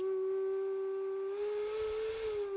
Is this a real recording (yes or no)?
yes